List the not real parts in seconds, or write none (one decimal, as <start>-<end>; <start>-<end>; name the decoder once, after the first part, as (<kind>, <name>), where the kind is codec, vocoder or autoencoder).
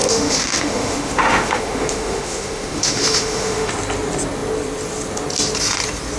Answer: 0.0-3.7 (autoencoder, DAC-VAE)